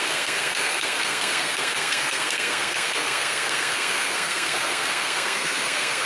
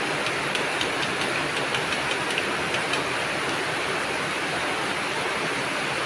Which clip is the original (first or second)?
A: second